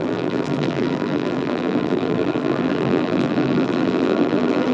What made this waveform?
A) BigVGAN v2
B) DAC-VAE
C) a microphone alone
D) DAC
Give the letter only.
A